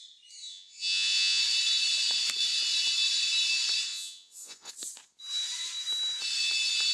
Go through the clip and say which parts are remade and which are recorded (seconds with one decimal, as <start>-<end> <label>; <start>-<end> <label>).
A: 0.0-0.4 recorded; 0.4-1.4 remade; 1.4-3.9 recorded; 3.9-4.7 remade; 4.7-6.9 recorded